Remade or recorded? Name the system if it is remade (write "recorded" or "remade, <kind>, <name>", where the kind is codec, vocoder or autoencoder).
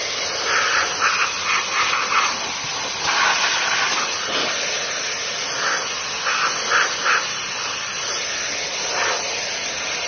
recorded